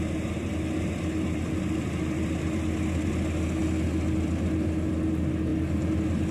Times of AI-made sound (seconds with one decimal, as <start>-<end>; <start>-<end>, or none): none